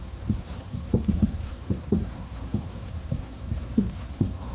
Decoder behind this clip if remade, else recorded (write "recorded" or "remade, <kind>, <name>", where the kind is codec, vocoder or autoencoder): remade, codec, SNAC